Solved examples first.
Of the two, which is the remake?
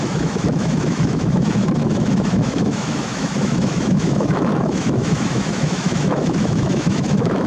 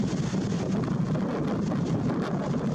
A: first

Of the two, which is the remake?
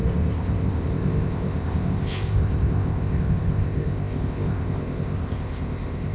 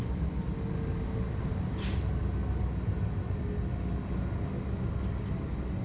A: first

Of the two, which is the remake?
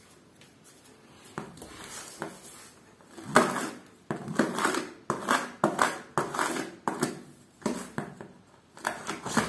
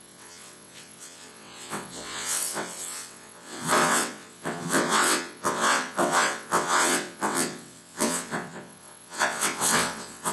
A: second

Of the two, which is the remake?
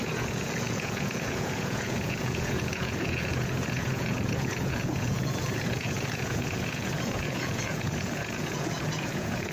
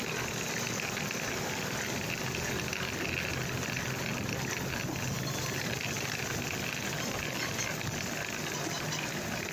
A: first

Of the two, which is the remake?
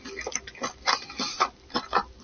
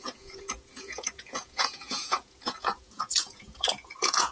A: second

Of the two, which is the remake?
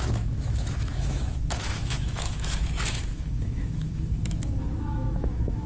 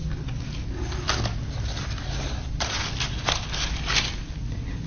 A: first